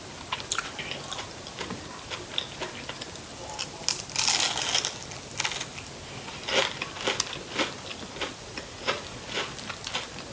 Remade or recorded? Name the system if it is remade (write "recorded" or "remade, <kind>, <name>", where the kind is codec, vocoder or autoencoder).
recorded